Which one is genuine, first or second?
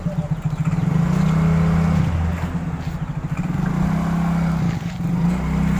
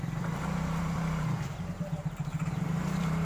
first